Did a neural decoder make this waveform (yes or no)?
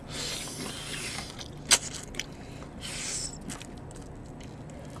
no